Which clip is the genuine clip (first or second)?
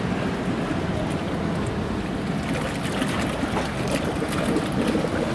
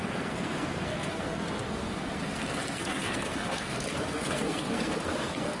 first